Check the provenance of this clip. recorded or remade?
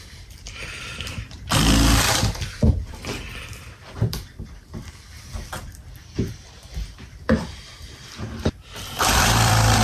remade